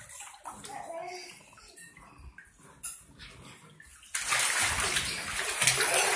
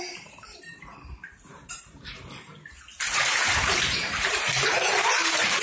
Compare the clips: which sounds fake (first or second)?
second